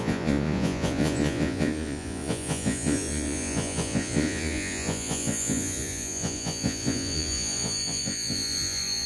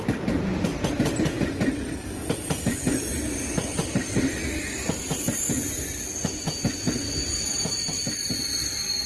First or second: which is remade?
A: first